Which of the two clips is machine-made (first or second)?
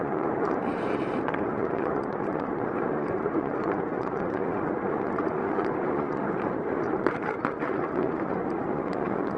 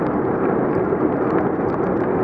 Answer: first